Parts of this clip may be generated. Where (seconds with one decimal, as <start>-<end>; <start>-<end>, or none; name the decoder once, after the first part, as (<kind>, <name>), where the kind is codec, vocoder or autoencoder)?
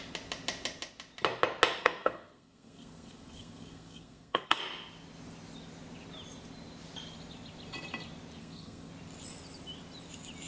1.8-4.6 (codec, SNAC); 8.4-8.9